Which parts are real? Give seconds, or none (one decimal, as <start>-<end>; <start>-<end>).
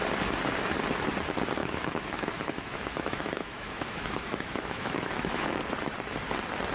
0.0-1.6; 5.6-6.7